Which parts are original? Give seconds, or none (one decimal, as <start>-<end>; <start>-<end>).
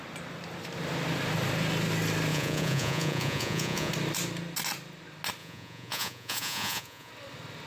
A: 0.0-2.3; 3.9-5.4; 7.1-7.7